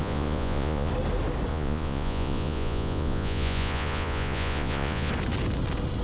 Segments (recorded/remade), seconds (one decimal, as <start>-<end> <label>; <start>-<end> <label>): 0.0-0.9 remade; 0.9-1.5 recorded; 1.5-5.1 remade; 5.1-6.0 recorded